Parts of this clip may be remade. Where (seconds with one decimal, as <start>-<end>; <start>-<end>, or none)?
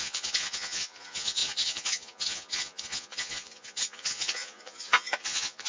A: 0.0-5.7